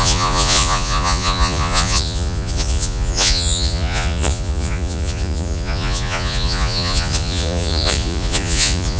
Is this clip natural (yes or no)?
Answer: no